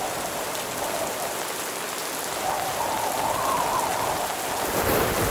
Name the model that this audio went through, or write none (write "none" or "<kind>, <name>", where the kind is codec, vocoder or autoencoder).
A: none